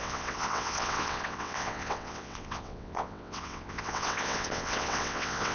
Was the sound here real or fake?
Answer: fake